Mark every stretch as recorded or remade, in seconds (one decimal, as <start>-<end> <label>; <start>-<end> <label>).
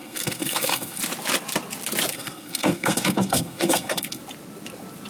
0.0-1.0 remade; 1.0-2.1 recorded; 2.1-4.2 remade; 4.2-5.1 recorded